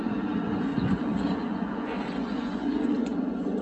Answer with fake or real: fake